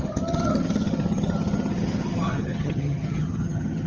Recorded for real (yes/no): no